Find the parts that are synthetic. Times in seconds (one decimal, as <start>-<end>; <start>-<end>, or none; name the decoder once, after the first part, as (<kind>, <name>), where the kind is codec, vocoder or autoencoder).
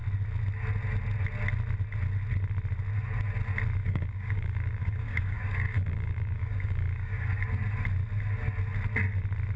3.8-7.5 (codec, DAC)